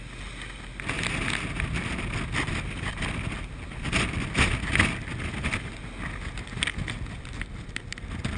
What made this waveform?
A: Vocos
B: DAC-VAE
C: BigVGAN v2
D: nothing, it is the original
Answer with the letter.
D